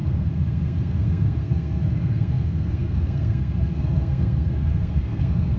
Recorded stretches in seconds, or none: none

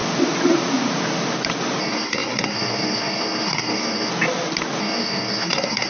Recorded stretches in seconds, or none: 0.0-1.8; 4.1-4.8

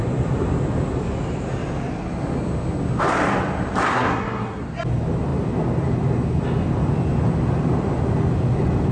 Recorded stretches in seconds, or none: 0.0-3.9; 4.6-8.9